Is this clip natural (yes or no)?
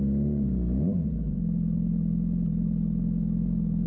yes